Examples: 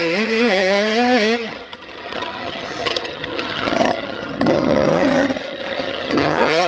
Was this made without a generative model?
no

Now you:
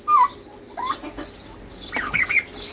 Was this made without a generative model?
yes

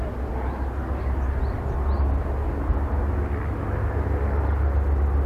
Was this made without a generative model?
yes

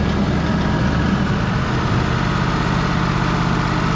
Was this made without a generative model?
yes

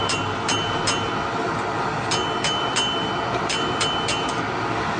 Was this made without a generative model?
yes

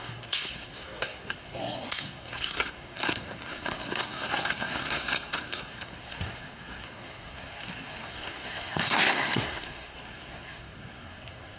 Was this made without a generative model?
no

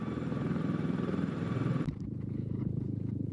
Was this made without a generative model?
no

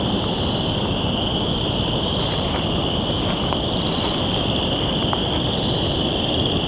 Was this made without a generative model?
yes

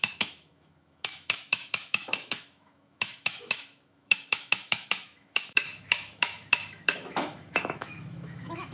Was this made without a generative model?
no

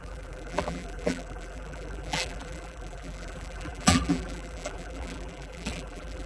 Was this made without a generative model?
no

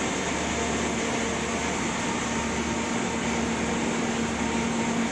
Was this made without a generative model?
yes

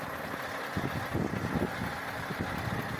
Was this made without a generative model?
yes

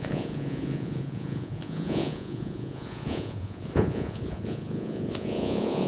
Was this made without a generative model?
no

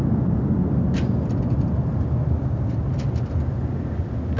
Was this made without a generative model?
yes